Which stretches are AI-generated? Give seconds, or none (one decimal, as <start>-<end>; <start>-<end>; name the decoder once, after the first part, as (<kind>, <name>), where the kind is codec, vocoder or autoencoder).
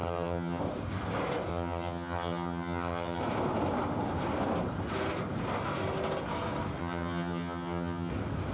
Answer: 0.0-0.6 (vocoder, HiFi-GAN); 1.5-3.2; 6.8-8.1